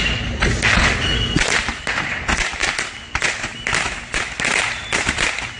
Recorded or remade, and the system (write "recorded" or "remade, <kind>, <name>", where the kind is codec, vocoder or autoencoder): recorded